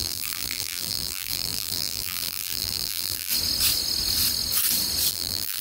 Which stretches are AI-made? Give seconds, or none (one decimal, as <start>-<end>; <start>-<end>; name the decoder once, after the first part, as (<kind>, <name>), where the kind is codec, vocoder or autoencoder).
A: 0.0-3.3 (vocoder, BigVGAN v2); 5.1-5.6